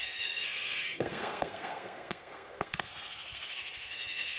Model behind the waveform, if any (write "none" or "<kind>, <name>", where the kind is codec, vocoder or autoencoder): codec, SNAC